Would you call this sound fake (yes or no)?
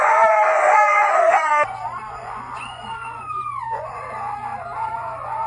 yes